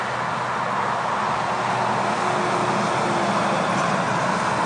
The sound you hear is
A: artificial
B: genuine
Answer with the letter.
B